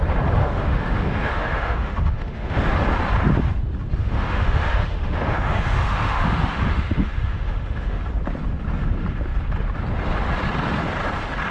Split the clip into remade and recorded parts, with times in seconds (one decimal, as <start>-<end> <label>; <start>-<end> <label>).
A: 0.0-0.4 recorded; 0.4-2.7 remade; 2.7-4.0 recorded; 4.0-8.0 remade; 8.0-11.5 recorded